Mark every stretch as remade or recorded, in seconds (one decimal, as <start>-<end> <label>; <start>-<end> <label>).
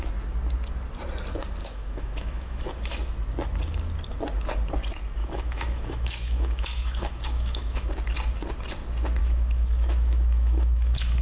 0.0-1.6 recorded; 1.6-2.6 remade; 2.6-5.2 recorded; 5.2-7.9 remade; 7.9-9.2 recorded; 9.2-11.2 remade